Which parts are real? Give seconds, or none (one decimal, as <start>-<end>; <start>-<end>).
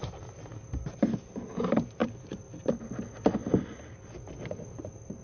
0.0-0.5; 1.0-2.0; 2.7-3.4